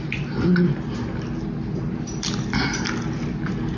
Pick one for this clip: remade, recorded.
recorded